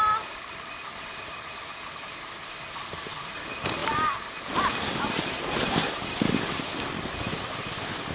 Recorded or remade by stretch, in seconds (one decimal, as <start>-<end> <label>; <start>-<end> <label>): 0.0-8.1 recorded